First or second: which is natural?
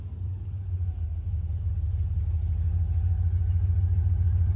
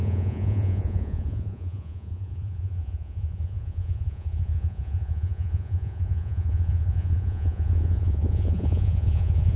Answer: first